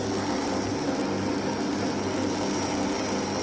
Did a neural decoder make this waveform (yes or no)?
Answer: no